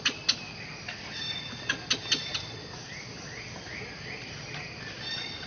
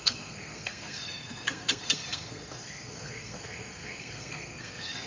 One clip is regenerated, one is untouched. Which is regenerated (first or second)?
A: second